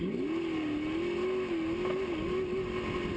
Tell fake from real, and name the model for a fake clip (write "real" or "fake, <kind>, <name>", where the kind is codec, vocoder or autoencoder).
real